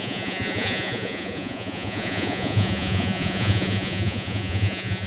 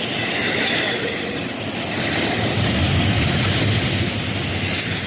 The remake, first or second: first